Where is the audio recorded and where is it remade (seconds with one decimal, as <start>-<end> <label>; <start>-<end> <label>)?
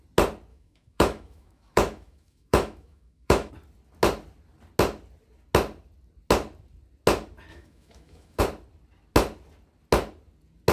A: 0.0-0.5 recorded; 0.5-3.5 remade; 3.5-7.5 recorded; 7.5-8.4 remade; 8.4-10.7 recorded